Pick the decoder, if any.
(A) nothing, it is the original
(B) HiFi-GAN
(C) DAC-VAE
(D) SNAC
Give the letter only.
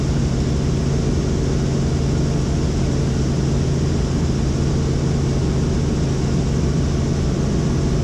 A